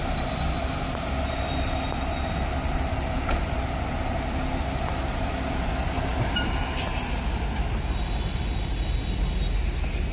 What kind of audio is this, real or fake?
real